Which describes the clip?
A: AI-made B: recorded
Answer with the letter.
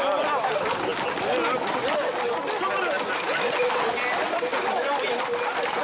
B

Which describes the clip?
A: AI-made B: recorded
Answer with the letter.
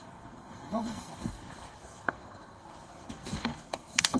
A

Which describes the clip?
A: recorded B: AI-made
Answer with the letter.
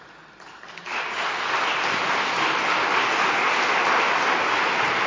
A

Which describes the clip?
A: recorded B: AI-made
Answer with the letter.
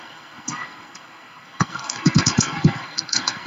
B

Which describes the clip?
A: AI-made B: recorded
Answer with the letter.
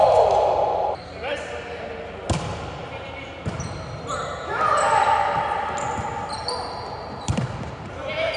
B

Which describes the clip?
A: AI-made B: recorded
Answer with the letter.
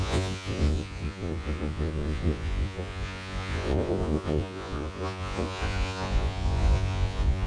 A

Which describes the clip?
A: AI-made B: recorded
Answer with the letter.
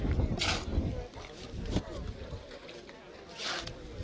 B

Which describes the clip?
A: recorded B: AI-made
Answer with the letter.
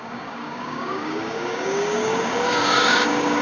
B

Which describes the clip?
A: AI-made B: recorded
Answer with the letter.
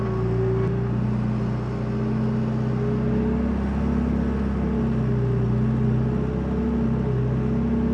B